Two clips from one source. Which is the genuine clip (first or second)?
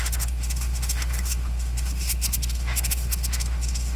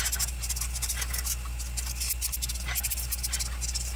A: second